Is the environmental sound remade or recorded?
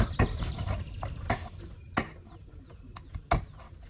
recorded